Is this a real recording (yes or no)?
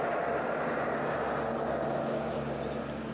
yes